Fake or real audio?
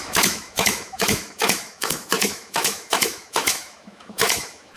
fake